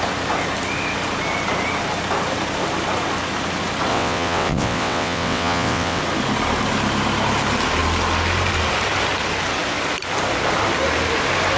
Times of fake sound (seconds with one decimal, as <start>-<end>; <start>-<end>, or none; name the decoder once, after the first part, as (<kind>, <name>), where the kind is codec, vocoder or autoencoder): 3.9-6.0 (vocoder, WaveNeXt)